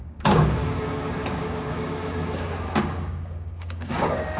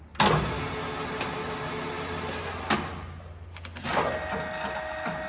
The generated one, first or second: first